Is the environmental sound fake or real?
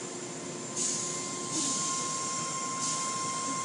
real